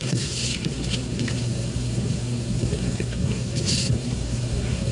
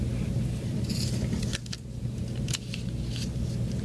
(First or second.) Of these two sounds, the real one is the second